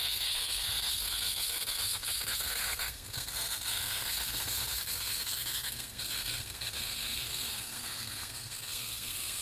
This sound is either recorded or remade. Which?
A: remade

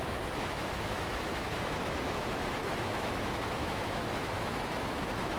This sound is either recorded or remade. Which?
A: remade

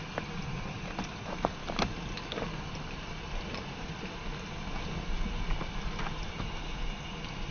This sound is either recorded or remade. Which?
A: recorded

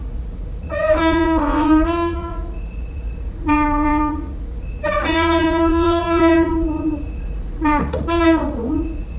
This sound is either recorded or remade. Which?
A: remade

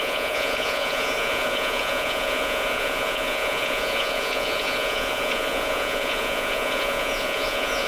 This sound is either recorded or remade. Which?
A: remade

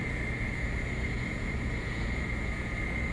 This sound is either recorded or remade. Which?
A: remade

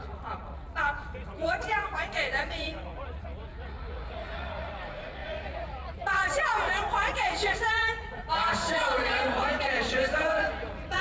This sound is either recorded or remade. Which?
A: remade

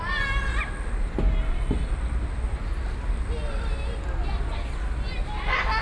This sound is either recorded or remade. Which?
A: recorded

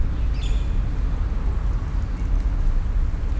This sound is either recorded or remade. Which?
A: recorded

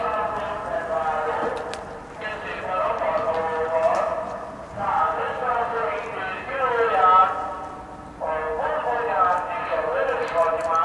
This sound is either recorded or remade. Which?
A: recorded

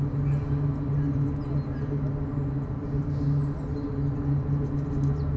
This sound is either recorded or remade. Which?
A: recorded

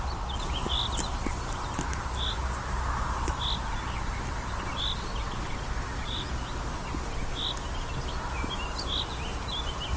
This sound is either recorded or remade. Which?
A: recorded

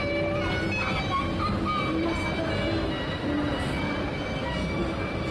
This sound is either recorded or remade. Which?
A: recorded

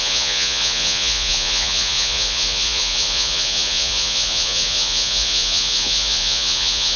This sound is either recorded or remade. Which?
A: remade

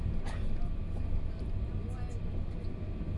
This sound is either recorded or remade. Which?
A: recorded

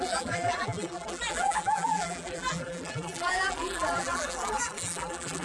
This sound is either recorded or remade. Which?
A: remade